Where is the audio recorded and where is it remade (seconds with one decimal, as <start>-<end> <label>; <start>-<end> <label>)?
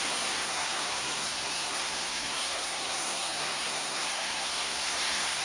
0.0-5.4 remade